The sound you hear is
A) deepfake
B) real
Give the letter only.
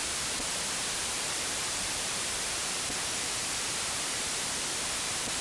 A